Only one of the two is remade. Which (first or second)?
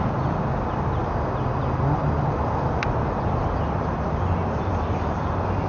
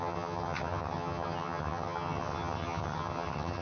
second